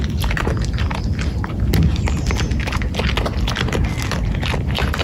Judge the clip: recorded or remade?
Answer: recorded